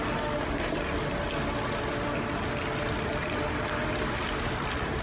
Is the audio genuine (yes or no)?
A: yes